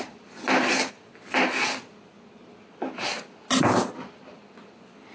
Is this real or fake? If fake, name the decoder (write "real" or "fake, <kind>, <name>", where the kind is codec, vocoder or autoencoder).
real